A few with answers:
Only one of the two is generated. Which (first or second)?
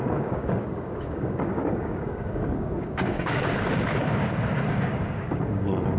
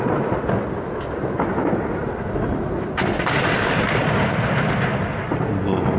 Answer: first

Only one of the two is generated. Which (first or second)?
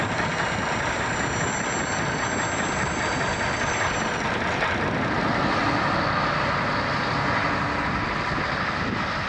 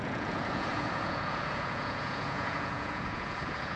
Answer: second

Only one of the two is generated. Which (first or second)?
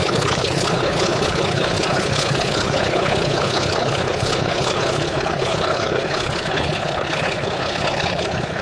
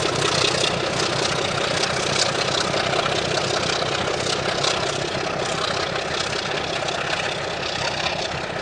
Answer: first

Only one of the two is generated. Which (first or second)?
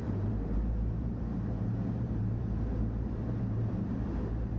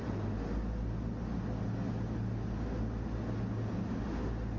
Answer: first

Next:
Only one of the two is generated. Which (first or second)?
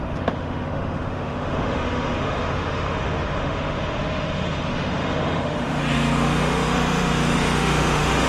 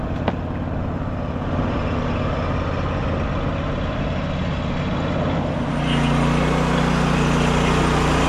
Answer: first